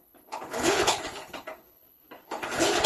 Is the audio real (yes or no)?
no